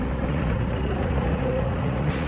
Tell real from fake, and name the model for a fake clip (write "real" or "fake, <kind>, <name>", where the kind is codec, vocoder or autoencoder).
fake, vocoder, Vocos